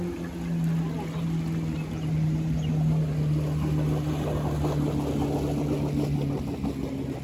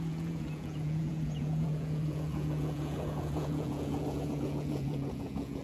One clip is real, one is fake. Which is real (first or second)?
first